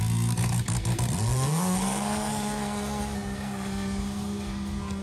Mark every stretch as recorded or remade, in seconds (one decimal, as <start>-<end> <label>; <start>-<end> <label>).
0.0-5.0 remade